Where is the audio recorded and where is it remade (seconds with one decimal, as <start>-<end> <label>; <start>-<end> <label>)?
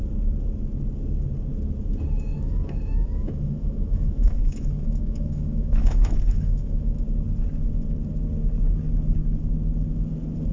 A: 0.0-2.3 recorded; 2.3-7.0 remade; 7.0-10.5 recorded